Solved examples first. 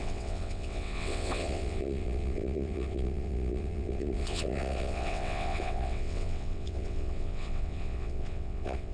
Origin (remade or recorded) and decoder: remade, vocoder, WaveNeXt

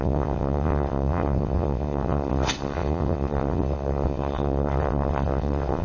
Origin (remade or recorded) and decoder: remade, vocoder, WaveNeXt